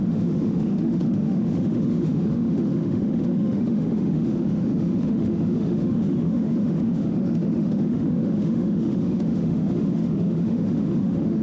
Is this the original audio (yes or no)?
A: no